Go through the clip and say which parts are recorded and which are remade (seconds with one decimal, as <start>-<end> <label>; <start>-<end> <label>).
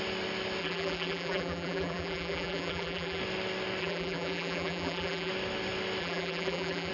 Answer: 0.0-0.6 recorded; 0.6-3.2 remade; 3.2-3.8 recorded; 3.8-5.3 remade; 5.3-6.0 recorded; 6.0-6.9 remade